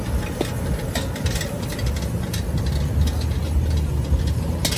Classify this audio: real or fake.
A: real